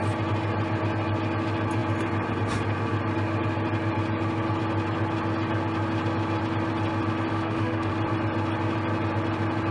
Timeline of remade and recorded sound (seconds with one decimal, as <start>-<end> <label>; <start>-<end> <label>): 0.0-7.3 recorded; 7.3-7.9 remade; 7.9-9.7 recorded